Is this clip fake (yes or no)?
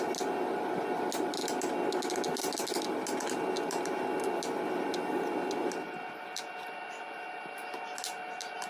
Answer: no